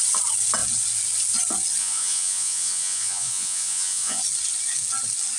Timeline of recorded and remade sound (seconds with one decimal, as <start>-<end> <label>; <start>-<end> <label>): 0.0-1.8 recorded; 1.8-4.2 remade; 4.2-5.4 recorded